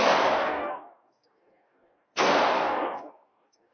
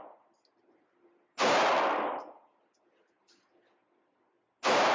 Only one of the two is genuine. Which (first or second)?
second